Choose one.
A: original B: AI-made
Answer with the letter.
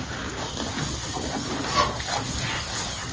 A